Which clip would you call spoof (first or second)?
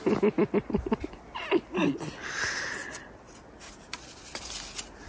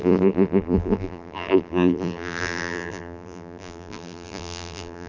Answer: second